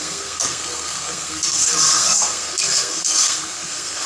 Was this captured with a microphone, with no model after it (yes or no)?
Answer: no